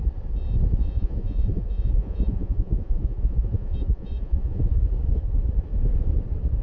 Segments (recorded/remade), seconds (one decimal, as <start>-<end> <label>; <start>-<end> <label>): 0.0-0.8 recorded; 0.8-4.8 remade; 4.8-6.6 recorded